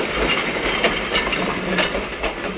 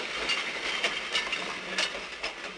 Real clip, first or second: second